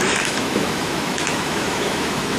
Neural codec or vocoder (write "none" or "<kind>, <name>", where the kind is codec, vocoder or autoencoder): autoencoder, DAC-VAE